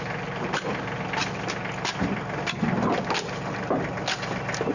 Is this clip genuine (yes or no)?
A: yes